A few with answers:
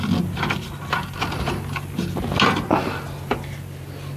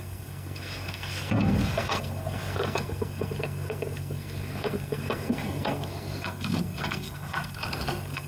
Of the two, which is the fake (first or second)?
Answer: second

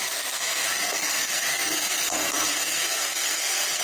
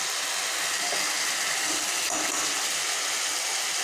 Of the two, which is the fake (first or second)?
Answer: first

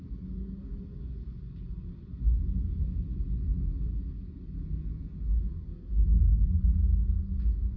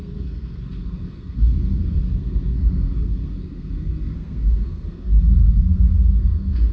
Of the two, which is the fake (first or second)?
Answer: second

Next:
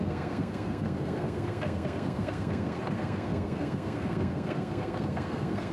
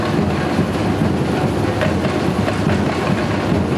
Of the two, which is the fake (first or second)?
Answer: first